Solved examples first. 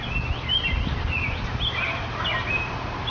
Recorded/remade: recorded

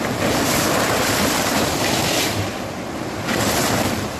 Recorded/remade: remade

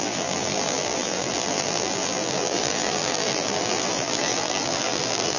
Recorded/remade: remade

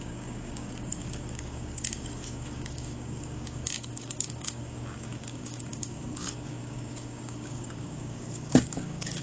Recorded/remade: remade